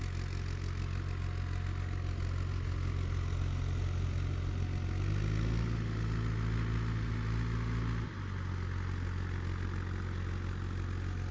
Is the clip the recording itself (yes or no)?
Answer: yes